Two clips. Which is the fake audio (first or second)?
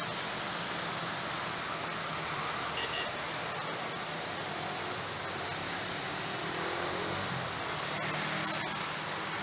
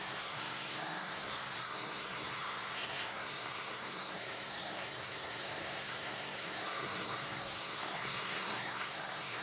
second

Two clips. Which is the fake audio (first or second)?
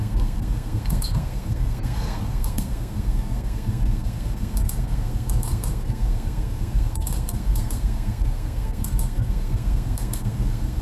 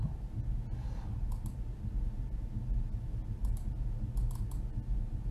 first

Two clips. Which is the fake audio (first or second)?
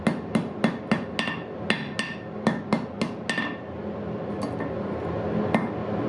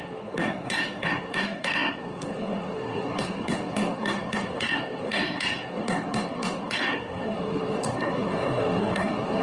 second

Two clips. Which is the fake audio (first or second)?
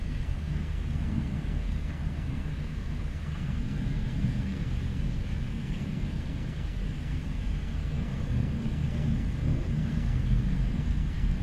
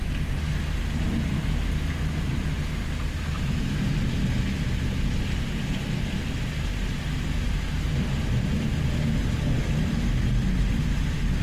first